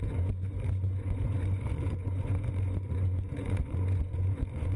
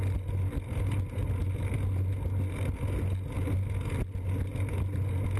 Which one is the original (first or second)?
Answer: second